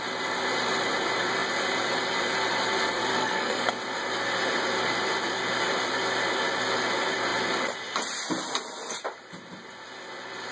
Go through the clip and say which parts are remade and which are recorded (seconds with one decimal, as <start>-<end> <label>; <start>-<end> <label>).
0.0-3.2 recorded; 3.2-3.7 remade; 3.7-10.5 recorded